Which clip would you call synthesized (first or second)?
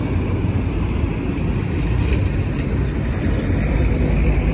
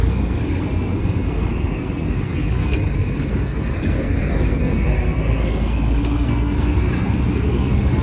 second